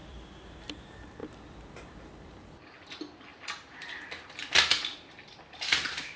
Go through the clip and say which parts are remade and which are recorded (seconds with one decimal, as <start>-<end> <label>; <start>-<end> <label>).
0.0-0.7 remade; 0.7-1.2 recorded; 1.2-2.6 remade; 2.6-3.3 recorded; 3.3-4.2 remade; 4.2-6.2 recorded